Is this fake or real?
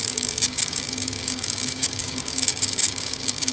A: fake